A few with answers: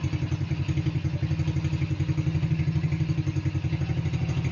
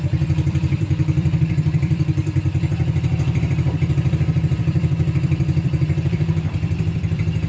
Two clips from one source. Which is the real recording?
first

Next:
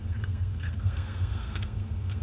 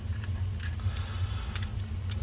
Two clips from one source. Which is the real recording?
second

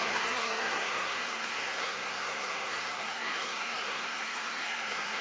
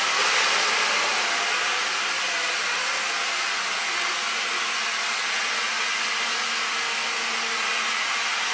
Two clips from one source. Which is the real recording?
second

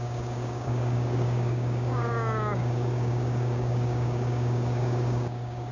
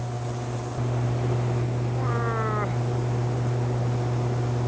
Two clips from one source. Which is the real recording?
second